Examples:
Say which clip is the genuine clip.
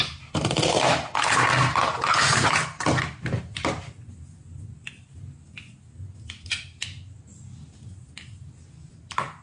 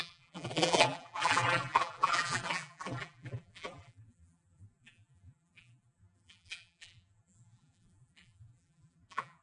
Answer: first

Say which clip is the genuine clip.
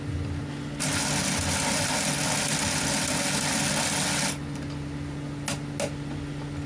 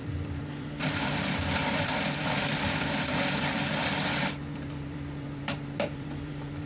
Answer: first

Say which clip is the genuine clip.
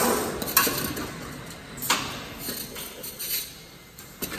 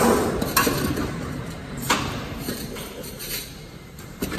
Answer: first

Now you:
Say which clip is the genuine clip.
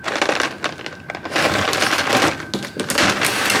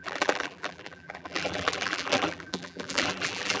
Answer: first